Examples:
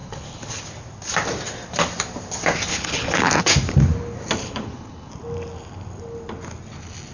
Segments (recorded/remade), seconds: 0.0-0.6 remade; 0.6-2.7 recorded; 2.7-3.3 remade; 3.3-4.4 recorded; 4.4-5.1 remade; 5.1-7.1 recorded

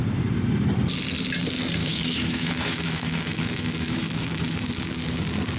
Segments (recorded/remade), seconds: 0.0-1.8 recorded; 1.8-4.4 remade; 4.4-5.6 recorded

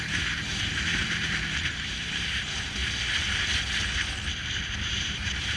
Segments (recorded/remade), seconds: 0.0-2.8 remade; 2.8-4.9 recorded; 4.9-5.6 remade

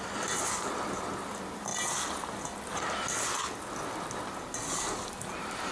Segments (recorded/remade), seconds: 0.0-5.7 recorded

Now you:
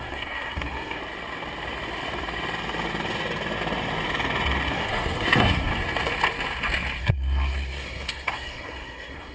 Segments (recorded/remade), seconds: 0.0-1.0 remade; 1.0-4.7 recorded; 4.7-5.7 remade; 5.7-7.0 recorded; 7.0-9.3 remade

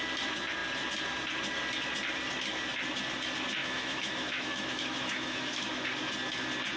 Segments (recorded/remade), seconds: 0.0-3.6 recorded; 3.6-5.7 remade; 5.7-6.8 recorded